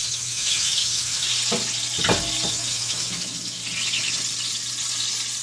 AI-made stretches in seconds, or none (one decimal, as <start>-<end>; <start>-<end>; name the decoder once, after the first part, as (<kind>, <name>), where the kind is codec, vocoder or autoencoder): 0.0-1.3 (autoencoder, DAC-VAE); 2.5-3.6